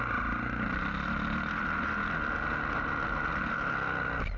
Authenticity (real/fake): real